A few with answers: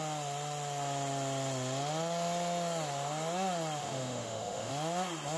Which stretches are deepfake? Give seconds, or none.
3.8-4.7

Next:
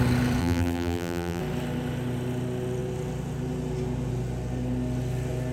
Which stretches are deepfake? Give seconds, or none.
0.4-1.4